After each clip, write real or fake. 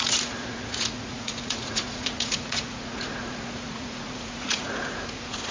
fake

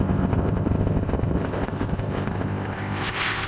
fake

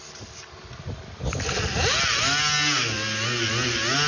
real